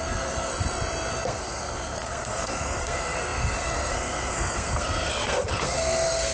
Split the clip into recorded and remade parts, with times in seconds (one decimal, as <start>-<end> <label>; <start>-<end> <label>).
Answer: 0.0-0.5 remade; 0.5-1.1 recorded; 1.1-6.3 remade

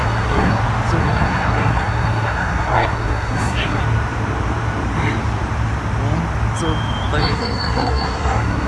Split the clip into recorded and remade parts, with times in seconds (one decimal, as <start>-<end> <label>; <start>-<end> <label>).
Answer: 0.0-0.6 remade; 0.6-1.0 recorded; 1.0-3.8 remade; 3.8-7.2 recorded; 7.2-8.7 remade